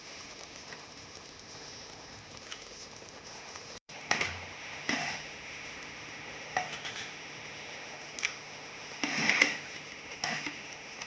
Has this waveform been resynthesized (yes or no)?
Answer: yes